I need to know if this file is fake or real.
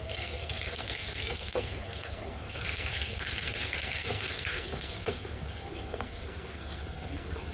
fake